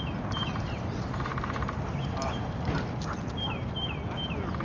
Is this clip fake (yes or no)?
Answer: no